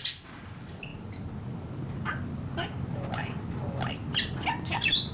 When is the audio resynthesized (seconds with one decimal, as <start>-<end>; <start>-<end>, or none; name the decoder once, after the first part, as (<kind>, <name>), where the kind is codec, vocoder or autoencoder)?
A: none